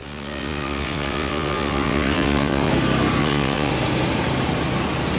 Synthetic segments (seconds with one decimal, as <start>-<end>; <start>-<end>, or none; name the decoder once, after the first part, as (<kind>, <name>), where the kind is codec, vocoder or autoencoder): 0.0-2.7 (vocoder, WaveNeXt); 3.2-3.7